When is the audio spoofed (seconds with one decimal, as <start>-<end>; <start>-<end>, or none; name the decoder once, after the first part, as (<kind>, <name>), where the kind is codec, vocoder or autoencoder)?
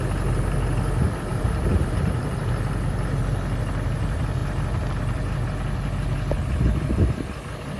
1.3-2.4 (vocoder, BigVGAN v2)